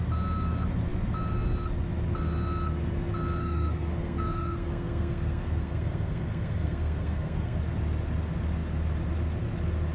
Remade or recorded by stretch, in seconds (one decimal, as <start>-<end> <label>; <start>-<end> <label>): 0.0-3.4 recorded; 3.4-7.6 remade; 7.6-9.9 recorded